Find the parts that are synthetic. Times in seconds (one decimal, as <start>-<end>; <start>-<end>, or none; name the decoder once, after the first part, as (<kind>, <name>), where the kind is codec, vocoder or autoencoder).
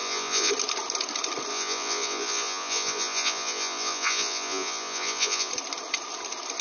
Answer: 0.0-0.5 (vocoder, Vocos); 1.5-5.5